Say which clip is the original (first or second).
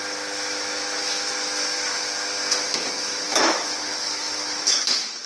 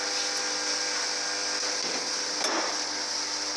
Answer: second